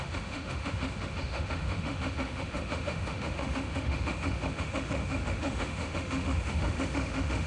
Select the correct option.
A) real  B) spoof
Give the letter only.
B